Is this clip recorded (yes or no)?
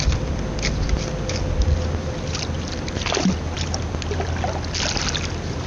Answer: yes